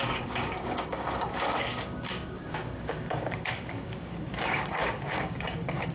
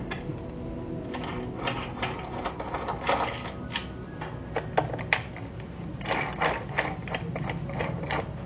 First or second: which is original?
second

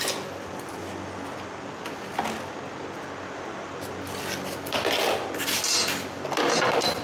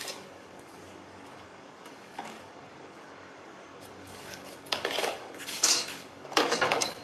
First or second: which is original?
first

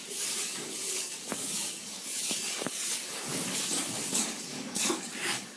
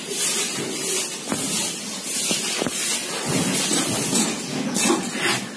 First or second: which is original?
second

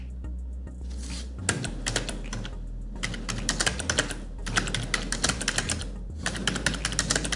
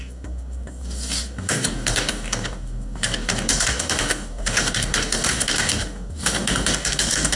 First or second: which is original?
first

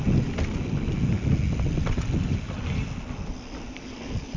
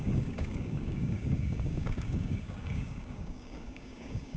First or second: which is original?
first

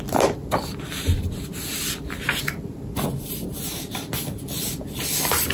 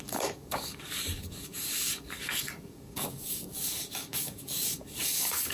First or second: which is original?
first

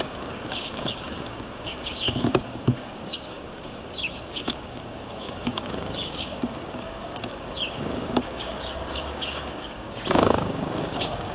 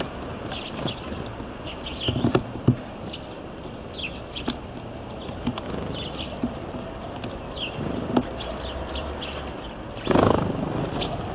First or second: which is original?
second